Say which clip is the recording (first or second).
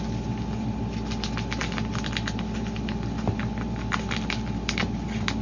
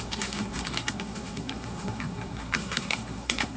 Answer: first